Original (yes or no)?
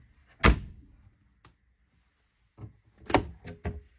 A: yes